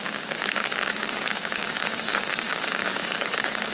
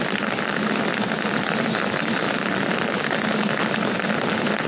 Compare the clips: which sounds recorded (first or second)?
second